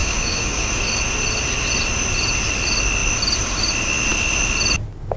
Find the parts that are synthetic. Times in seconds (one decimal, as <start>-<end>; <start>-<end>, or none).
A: 0.0-0.7